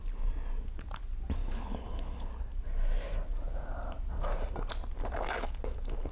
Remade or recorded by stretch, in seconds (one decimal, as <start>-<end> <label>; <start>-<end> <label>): 0.0-1.4 recorded; 1.4-2.3 remade; 2.3-6.1 recorded